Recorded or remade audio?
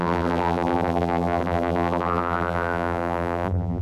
remade